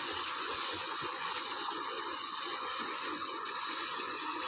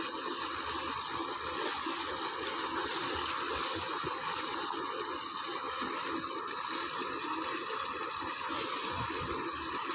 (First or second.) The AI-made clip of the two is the first